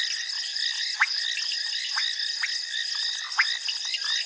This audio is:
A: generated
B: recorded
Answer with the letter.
B